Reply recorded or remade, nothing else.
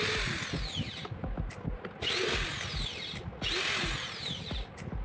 recorded